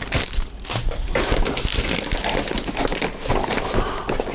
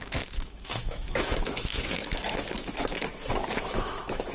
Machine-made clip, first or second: second